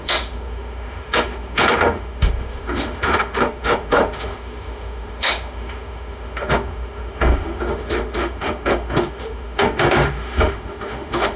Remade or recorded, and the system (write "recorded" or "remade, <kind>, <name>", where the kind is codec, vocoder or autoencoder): remade, autoencoder, DAC-VAE